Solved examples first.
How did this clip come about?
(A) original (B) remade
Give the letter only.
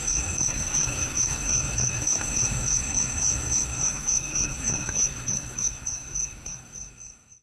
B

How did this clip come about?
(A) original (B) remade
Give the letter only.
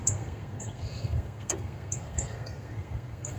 B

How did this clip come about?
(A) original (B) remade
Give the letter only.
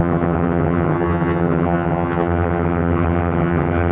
B